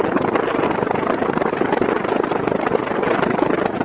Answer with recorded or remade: recorded